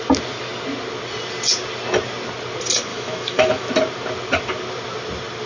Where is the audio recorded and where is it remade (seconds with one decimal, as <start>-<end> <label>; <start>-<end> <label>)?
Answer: 0.0-2.9 recorded; 2.9-3.7 remade; 3.7-5.5 recorded